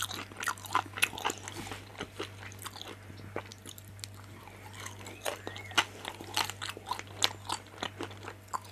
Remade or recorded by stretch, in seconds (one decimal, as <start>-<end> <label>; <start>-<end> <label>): 0.0-8.7 recorded